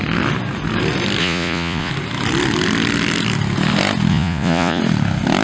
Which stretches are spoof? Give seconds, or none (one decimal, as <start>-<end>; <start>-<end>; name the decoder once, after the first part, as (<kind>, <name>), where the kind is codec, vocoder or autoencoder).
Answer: 1.2-1.9 (vocoder, Vocos); 4.1-4.8